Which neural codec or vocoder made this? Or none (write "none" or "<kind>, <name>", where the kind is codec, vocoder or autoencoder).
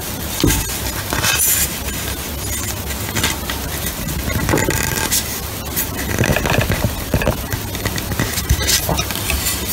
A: none